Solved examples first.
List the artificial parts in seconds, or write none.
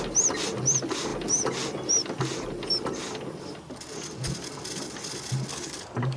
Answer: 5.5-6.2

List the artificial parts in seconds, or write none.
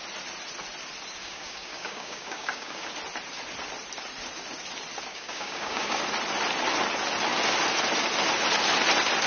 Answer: 1.2-2.9; 5.1-6.0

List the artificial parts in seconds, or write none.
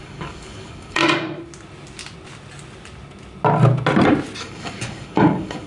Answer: 0.0-1.0; 4.4-5.7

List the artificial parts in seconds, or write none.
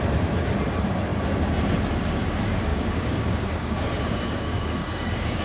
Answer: 2.7-5.4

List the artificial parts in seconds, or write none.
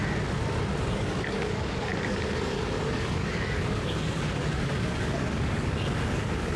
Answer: 0.8-6.6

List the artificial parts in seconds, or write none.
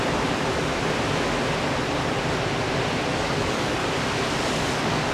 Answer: 3.1-3.8; 4.5-5.1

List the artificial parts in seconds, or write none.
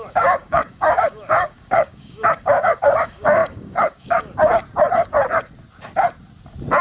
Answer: 0.0-4.6